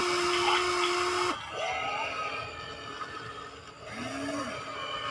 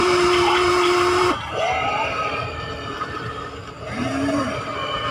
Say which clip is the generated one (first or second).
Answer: second